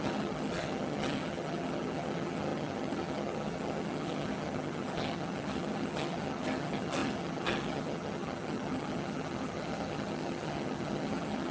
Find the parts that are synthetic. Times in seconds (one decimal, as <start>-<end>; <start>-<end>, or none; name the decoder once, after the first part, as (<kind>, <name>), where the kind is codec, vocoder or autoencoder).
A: 0.0-11.5 (vocoder, HiFi-GAN)